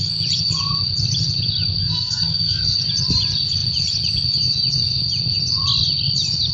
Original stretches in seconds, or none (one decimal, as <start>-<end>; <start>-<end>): 0.0-1.8; 2.6-6.5